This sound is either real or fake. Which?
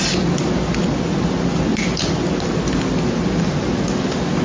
real